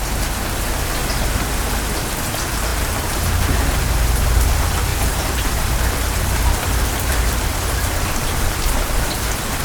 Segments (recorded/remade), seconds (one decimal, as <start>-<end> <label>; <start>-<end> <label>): 0.0-4.9 recorded; 4.9-9.2 remade; 9.2-9.6 recorded